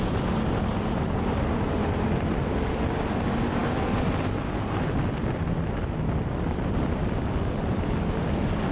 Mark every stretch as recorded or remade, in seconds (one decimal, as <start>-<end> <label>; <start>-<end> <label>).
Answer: 0.0-8.7 recorded